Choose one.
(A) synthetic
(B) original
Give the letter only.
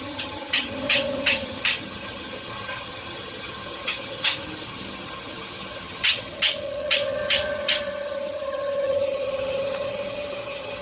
A